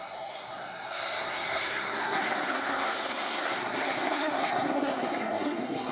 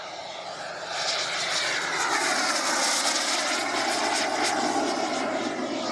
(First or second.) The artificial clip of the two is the first